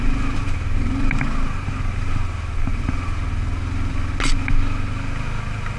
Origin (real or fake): real